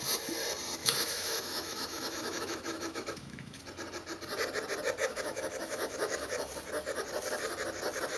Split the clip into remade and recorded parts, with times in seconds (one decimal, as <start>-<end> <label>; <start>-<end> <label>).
0.0-0.8 recorded; 0.8-3.6 remade; 3.6-5.0 recorded; 5.0-6.5 remade; 6.5-8.2 recorded